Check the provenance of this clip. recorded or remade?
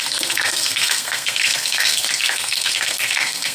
remade